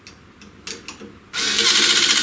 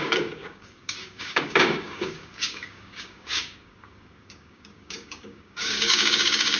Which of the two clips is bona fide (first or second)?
first